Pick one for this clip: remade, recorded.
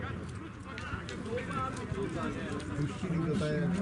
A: recorded